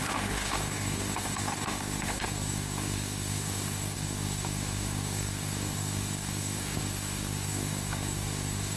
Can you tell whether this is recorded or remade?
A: remade